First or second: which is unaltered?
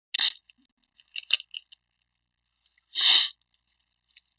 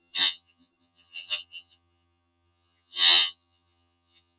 first